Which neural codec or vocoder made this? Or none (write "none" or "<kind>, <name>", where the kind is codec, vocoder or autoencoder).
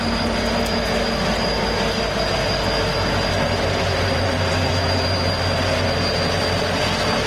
none